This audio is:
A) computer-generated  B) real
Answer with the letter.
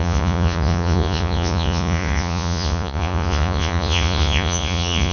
A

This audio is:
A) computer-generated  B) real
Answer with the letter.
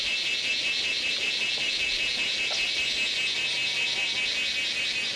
B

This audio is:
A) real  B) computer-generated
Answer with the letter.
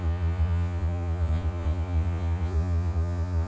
B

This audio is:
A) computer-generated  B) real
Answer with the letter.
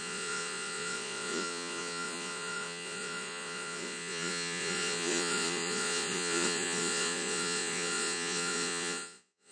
A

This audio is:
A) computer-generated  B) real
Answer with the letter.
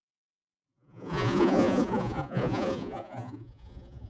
A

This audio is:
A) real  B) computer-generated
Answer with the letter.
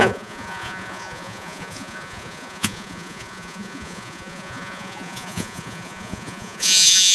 B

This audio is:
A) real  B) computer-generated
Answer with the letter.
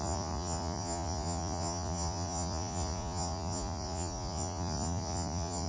B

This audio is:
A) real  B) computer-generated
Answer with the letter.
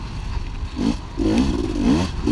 A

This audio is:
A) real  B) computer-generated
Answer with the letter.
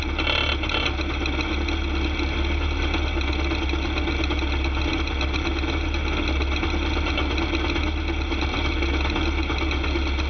A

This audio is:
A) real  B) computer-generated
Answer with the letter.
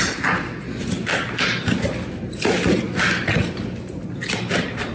A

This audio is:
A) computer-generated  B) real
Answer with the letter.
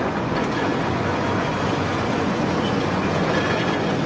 A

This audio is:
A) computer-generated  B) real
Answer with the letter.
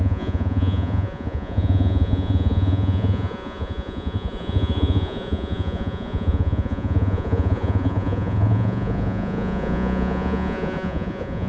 A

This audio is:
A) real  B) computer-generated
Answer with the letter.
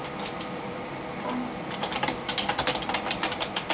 A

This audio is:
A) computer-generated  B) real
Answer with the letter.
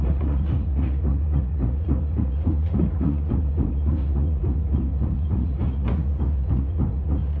A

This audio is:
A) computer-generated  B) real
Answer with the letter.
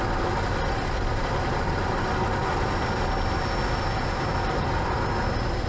B